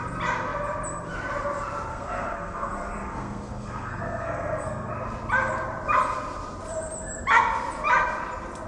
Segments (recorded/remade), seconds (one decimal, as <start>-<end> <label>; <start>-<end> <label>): 0.0-1.9 recorded; 1.9-4.9 remade; 4.9-8.7 recorded